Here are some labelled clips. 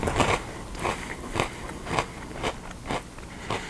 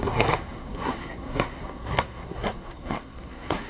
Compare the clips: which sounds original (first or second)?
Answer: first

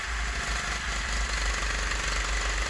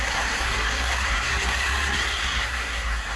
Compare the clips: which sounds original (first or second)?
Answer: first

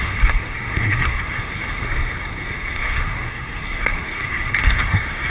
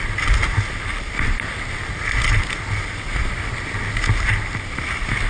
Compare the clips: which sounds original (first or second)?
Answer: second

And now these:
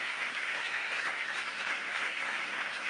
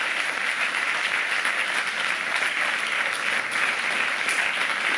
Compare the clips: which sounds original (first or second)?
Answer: second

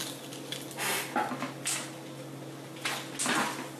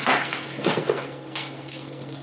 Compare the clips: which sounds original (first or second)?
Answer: first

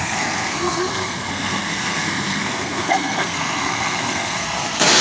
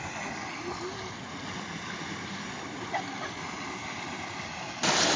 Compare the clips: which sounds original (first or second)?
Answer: second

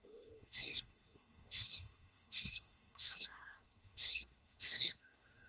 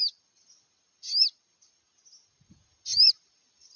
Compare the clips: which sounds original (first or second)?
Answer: second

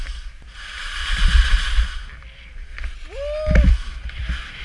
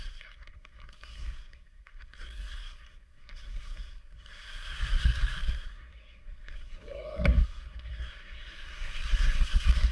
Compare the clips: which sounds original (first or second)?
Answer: first